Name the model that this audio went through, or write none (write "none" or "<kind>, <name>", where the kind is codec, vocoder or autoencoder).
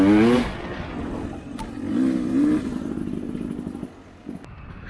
none